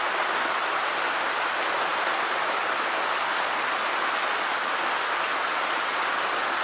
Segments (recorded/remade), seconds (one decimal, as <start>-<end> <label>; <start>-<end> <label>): 0.0-6.6 recorded